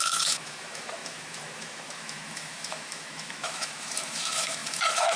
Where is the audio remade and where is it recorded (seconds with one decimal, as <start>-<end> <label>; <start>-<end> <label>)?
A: 0.0-5.2 remade